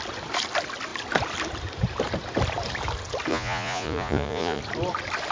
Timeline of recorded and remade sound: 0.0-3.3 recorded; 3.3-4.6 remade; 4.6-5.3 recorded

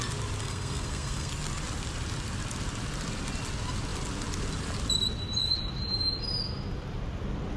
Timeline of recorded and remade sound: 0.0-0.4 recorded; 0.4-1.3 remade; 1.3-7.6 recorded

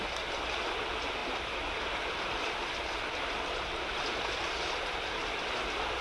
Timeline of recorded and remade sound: 0.0-6.0 recorded

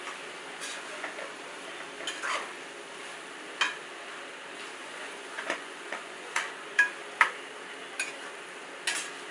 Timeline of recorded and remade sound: 0.0-0.5 recorded; 0.5-1.3 remade; 1.3-4.8 recorded; 4.8-6.8 remade; 6.8-9.3 recorded